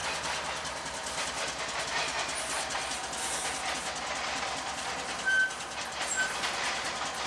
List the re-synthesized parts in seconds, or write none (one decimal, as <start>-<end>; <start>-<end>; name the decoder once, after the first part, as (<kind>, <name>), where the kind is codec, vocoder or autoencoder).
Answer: none